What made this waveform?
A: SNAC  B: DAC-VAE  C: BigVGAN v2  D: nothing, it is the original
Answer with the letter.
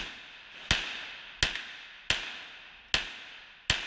D